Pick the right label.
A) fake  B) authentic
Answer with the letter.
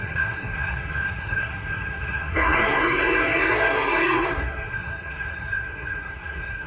A